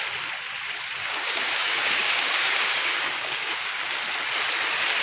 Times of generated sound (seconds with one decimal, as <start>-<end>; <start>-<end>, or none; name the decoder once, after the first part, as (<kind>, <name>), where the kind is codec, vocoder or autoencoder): 1.0-4.0 (codec, DAC)